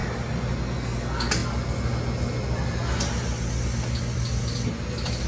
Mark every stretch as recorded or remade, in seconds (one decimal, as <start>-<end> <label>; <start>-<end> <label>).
0.0-5.3 recorded